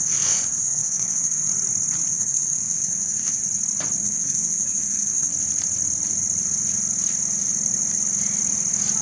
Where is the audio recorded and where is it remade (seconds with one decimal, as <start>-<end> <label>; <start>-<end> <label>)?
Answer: 0.0-1.5 remade; 1.5-2.1 recorded; 2.1-3.4 remade; 3.4-4.0 recorded; 4.0-5.3 remade; 5.3-9.0 recorded